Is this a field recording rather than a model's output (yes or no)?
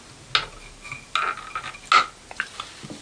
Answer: yes